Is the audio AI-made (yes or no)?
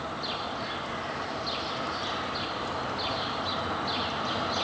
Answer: no